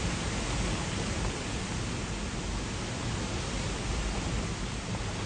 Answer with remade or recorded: recorded